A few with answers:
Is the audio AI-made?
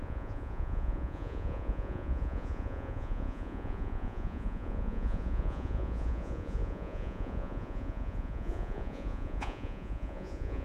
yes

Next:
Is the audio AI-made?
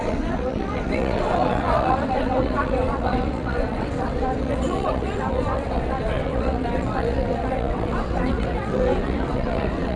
yes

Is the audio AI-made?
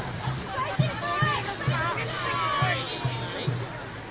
no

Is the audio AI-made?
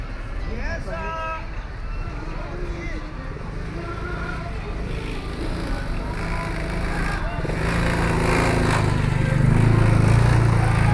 no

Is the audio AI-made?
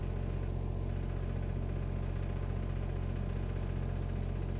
no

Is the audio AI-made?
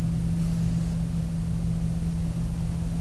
no